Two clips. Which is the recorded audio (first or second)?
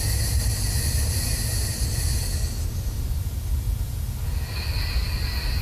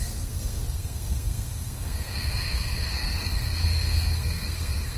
first